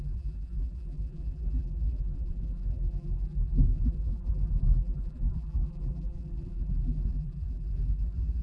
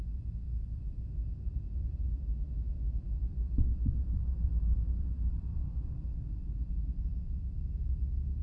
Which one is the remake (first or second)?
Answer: first